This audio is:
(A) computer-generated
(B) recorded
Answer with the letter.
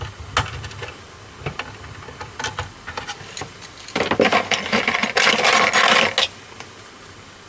B